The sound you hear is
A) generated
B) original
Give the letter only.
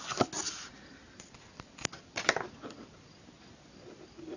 B